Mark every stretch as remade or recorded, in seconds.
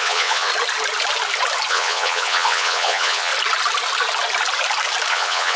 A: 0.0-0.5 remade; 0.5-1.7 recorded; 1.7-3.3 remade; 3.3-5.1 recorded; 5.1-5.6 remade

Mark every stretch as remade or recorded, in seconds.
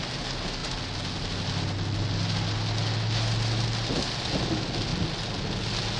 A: 0.0-6.0 recorded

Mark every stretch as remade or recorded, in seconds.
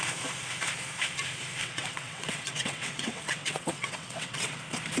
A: 0.0-1.6 recorded; 1.6-4.6 remade; 4.6-5.0 recorded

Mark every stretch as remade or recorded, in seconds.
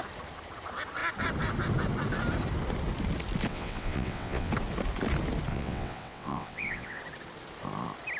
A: 0.0-3.5 recorded; 3.5-4.5 remade; 4.5-5.5 recorded; 5.5-7.0 remade; 7.0-8.2 recorded